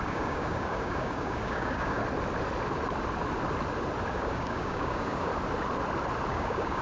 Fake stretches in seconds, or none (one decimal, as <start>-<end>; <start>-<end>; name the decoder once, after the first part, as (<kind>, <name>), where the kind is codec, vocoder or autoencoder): 0.0-2.0 (codec, DAC); 4.1-5.3; 6.3-6.8